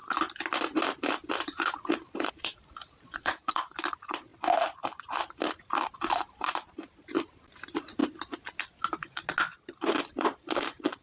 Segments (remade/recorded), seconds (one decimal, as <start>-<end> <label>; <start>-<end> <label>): 0.0-1.3 recorded; 1.3-4.3 remade; 4.3-5.2 recorded; 5.2-8.0 remade; 8.0-10.0 recorded; 10.0-11.0 remade